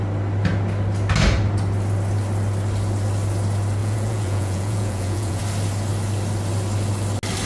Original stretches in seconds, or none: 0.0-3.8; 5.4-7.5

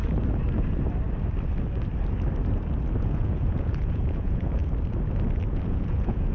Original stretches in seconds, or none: 0.0-3.0; 4.6-5.5

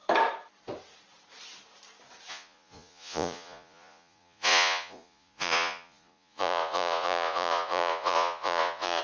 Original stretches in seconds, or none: 0.0-2.3

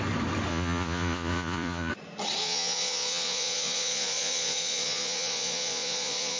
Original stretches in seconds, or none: 0.0-0.5; 1.9-2.4

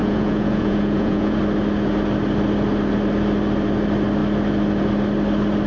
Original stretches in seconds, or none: 1.4-5.7

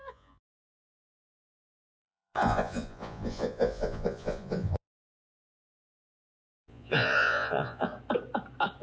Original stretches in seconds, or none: 7.9-8.8

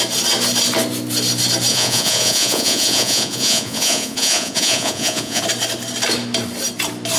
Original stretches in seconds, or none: 0.0-1.7; 5.4-7.2